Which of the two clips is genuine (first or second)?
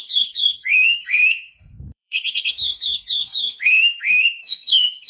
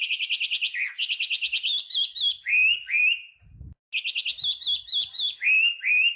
second